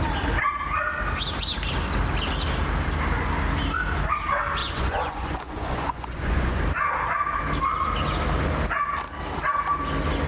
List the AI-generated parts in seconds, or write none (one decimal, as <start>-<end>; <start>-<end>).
4.6-6.6